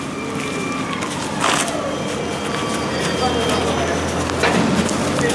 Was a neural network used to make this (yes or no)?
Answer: no